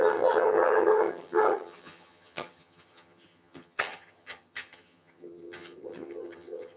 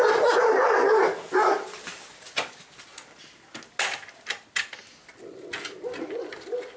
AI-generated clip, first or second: first